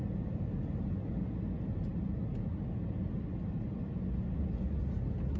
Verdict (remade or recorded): recorded